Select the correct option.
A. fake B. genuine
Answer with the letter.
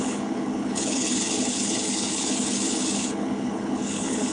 A